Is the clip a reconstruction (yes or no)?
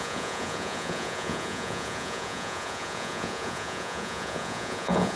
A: yes